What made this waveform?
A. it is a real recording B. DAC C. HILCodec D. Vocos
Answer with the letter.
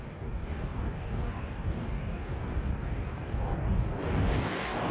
B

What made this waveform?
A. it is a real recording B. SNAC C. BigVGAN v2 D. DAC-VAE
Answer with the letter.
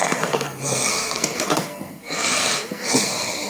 B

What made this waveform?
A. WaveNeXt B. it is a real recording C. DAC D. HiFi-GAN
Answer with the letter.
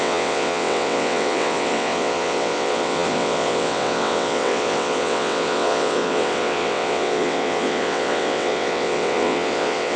A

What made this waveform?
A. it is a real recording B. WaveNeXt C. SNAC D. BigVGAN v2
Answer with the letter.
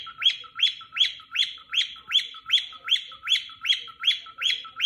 A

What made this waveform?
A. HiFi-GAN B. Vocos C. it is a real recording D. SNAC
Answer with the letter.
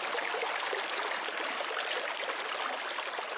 C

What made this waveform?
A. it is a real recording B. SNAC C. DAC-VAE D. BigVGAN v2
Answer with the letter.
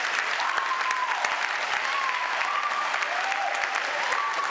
A